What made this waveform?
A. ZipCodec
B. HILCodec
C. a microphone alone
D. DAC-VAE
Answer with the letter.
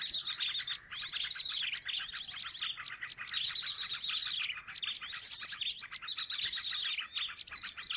C